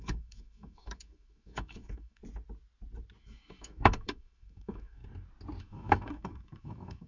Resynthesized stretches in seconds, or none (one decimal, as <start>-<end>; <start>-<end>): 0.0-2.2; 3.2-5.0; 5.6-7.1